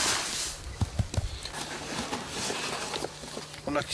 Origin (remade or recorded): recorded